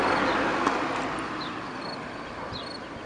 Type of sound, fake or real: real